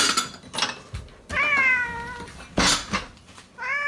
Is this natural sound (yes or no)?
yes